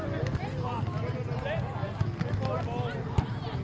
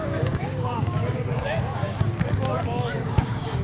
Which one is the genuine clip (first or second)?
first